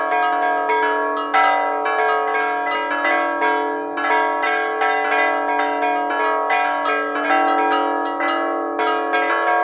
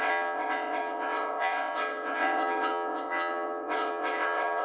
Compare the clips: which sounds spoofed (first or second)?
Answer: second